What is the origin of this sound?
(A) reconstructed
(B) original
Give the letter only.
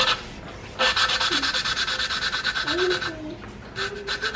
B